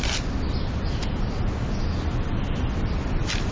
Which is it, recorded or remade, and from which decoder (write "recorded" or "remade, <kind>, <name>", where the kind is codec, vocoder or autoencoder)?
recorded